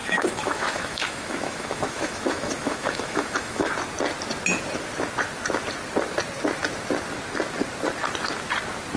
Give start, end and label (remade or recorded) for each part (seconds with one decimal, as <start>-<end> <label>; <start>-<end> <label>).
0.0-3.7 remade; 3.7-9.0 recorded